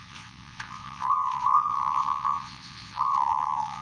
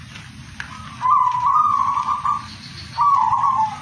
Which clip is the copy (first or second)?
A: first